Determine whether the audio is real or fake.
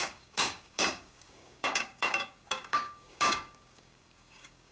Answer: fake